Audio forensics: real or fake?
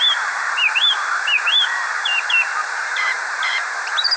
fake